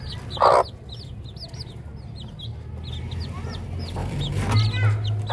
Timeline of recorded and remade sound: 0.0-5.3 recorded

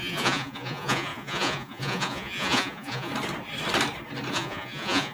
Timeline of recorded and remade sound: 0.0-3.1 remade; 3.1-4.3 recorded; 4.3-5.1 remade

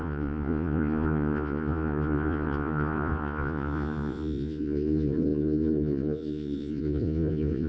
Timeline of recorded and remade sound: 0.0-7.7 remade